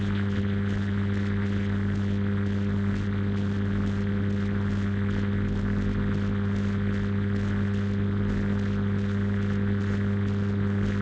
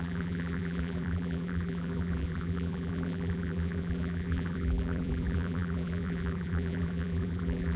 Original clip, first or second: first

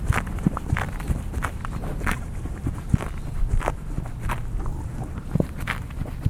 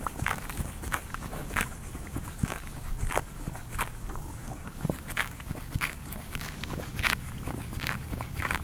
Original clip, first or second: first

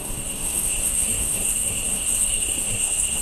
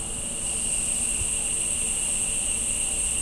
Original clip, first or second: second